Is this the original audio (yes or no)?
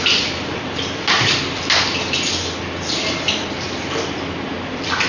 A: yes